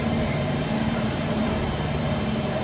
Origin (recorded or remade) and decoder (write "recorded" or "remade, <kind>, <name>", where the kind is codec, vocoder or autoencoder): remade, vocoder, BigVGAN v2